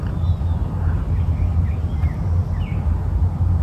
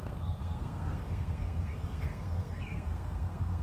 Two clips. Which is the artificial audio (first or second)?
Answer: second